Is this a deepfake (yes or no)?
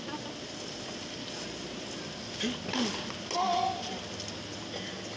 no